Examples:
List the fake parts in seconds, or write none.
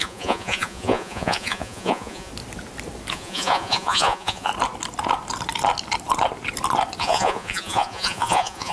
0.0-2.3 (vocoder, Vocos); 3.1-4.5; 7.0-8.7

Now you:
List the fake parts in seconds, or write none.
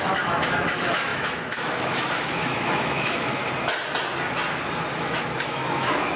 0.0-3.4 (autoencoder, DAC-VAE); 4.9-6.2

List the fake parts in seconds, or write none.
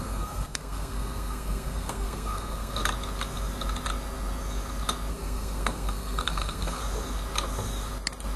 0.0-2.8 (codec, SNAC); 5.1-6.8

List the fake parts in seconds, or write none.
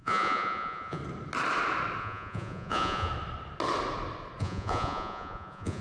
0.0-1.0 (vocoder, Vocos); 2.0-3.1; 4.4-5.8